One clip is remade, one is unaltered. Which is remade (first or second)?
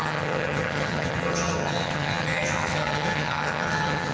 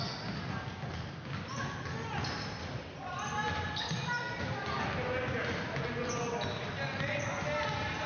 first